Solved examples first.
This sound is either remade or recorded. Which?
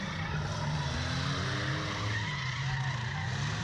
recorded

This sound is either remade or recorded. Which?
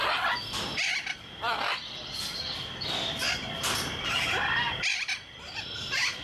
recorded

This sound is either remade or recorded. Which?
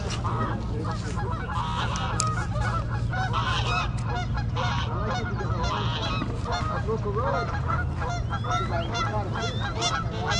recorded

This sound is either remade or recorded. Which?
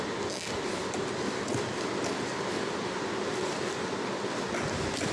recorded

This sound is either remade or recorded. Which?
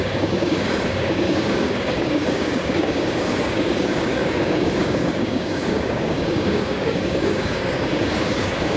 remade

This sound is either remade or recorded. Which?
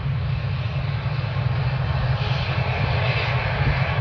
recorded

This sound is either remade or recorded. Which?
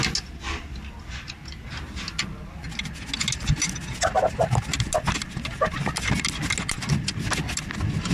recorded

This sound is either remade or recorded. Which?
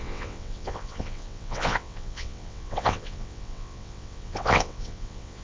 remade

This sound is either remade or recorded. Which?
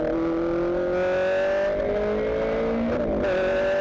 recorded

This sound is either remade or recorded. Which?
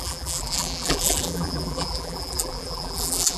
remade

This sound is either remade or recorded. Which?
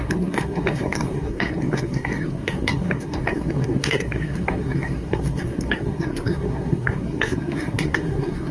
remade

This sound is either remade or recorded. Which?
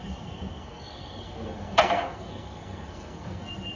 remade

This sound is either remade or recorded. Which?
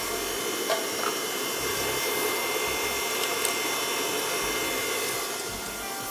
recorded